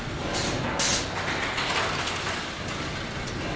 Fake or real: real